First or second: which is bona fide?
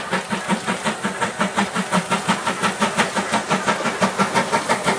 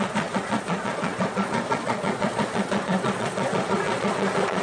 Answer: first